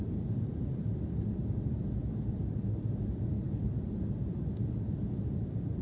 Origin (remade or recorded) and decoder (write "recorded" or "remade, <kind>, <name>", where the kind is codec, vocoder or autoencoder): remade, vocoder, BigVGAN v2